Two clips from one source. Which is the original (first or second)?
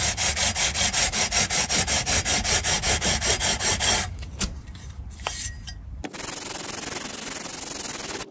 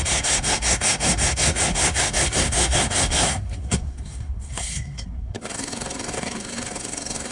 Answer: first